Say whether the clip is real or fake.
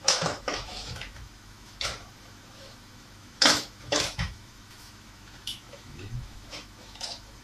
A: fake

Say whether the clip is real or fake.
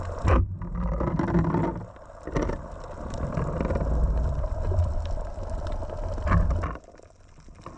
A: real